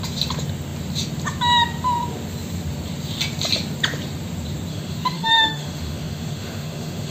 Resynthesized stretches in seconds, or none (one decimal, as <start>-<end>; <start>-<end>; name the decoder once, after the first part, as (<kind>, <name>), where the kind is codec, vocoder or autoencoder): 4.7-7.1 (autoencoder, DAC-VAE)